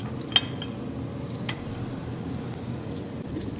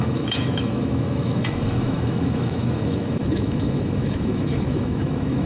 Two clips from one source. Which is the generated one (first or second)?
second